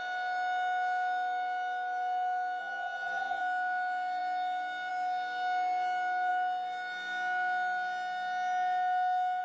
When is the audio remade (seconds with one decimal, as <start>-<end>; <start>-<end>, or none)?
2.6-3.4